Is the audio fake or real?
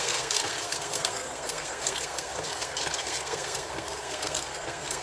fake